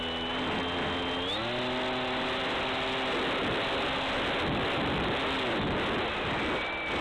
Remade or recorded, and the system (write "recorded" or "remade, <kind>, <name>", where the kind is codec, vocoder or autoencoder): recorded